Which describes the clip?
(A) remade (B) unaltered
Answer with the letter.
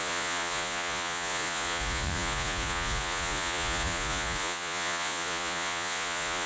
A